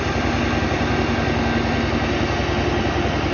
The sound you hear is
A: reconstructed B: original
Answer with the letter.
B